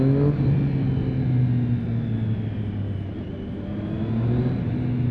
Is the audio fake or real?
real